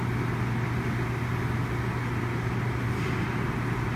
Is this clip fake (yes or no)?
no